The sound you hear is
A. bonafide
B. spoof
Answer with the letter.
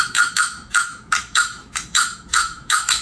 B